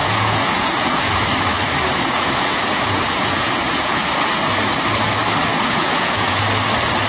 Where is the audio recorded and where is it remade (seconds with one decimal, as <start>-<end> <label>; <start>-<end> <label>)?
0.0-1.2 remade; 1.2-1.9 recorded; 1.9-4.4 remade; 4.4-5.5 recorded; 5.5-6.4 remade; 6.4-7.1 recorded